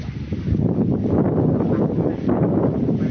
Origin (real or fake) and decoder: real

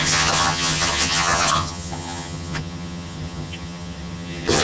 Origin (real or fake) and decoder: fake, vocoder, HiFi-GAN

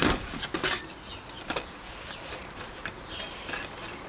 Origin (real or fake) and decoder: real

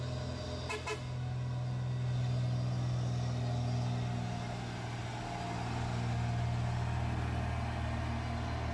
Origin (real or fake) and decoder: real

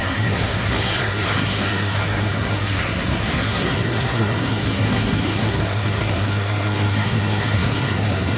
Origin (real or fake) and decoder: fake, codec, SNAC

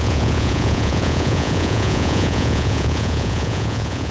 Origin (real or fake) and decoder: fake, vocoder, Vocos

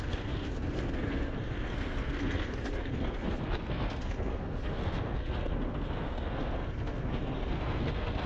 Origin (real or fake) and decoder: fake, codec, SNAC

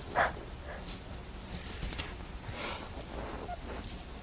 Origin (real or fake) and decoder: real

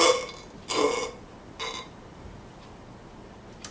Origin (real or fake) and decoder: real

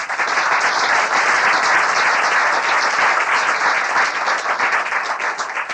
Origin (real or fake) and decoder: real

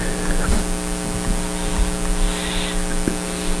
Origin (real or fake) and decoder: real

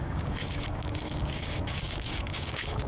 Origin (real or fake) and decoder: fake, codec, DAC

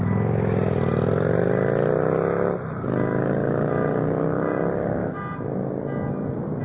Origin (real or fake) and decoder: real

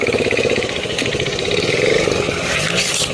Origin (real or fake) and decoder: fake, codec, DAC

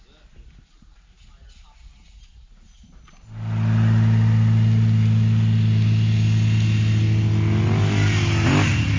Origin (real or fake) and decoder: real